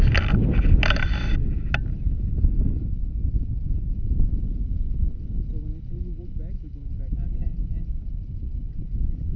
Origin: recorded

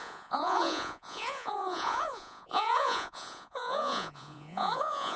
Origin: remade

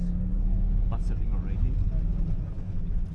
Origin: recorded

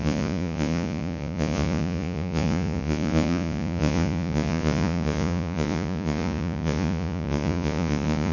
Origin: remade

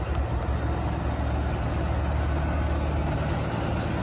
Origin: recorded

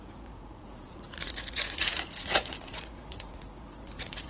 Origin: remade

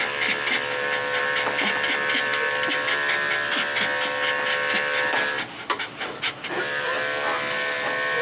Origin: recorded